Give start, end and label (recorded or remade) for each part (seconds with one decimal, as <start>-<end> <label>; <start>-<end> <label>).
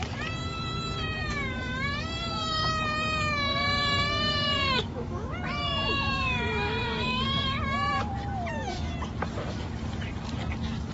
0.0-1.2 recorded; 1.2-2.7 remade; 2.7-3.5 recorded; 3.5-8.1 remade; 8.1-10.9 recorded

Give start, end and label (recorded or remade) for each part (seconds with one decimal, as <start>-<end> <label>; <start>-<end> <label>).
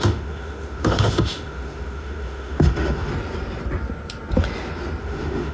0.0-3.1 remade; 3.1-5.0 recorded; 5.0-5.5 remade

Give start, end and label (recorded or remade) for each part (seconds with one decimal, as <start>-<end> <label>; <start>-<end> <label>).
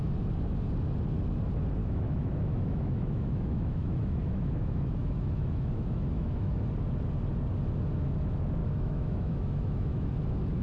0.0-1.8 recorded; 1.8-6.6 remade; 6.6-8.6 recorded; 8.6-10.1 remade; 10.1-10.6 recorded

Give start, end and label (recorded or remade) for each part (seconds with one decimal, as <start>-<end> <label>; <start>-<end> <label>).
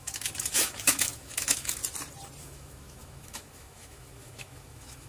0.0-1.8 remade; 1.8-2.4 recorded; 2.4-5.1 remade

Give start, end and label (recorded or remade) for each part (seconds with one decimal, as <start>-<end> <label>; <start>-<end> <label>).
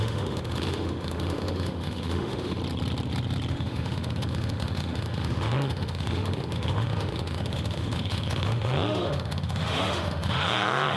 0.0-2.6 remade; 2.6-3.5 recorded; 3.5-11.0 remade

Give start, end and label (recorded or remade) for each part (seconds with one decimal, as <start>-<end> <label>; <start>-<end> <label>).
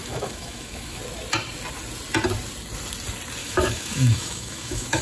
0.0-1.0 remade; 1.0-3.4 recorded; 3.4-5.0 remade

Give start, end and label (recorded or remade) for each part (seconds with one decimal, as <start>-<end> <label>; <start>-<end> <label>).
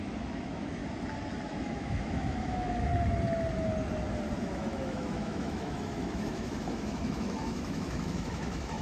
0.0-0.8 remade; 0.8-1.5 recorded; 1.5-2.9 remade; 2.9-4.4 recorded; 4.4-8.8 remade